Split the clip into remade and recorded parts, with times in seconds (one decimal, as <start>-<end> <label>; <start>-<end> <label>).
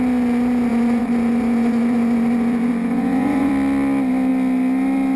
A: 0.0-0.7 recorded; 0.7-3.5 remade; 3.5-5.2 recorded